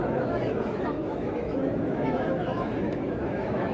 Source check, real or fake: fake